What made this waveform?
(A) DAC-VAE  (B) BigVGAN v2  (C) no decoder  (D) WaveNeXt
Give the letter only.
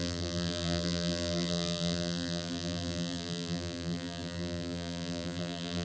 B